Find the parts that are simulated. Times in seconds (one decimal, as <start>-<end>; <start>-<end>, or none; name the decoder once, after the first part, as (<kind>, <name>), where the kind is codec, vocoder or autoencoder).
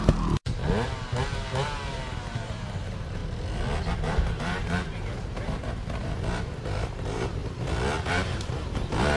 0.0-0.6 (vocoder, BigVGAN v2); 2.2-3.2; 3.9-7.4; 8.1-9.2